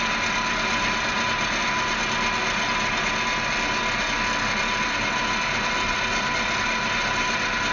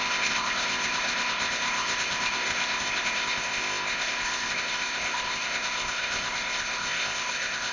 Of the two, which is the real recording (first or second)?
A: first